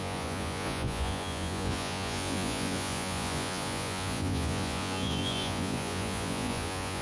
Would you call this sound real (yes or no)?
no